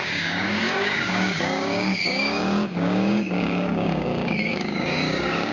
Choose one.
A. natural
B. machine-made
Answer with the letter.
B